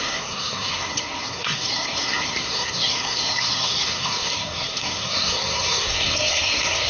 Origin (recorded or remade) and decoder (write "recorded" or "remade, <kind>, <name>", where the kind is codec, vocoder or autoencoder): remade, codec, SNAC